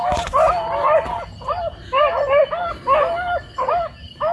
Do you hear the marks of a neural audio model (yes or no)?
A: no